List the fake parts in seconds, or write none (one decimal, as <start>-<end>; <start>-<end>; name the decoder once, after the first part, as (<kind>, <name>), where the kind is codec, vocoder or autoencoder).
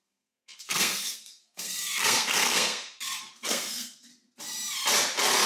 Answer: 0.0-4.1 (codec, SNAC)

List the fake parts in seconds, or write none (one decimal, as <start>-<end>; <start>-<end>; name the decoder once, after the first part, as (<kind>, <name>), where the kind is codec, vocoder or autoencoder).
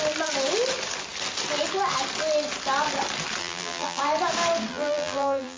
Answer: 3.4-4.0 (vocoder, BigVGAN v2); 4.7-5.6